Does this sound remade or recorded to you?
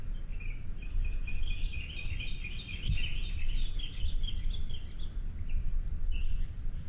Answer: recorded